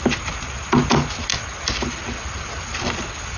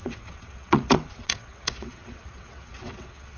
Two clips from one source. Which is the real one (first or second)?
first